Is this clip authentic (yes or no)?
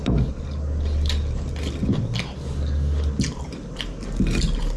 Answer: yes